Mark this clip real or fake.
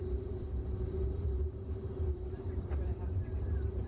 fake